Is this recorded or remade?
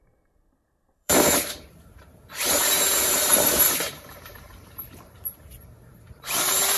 remade